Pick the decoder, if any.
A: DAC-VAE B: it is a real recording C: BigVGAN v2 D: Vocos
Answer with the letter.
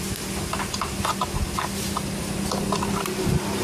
B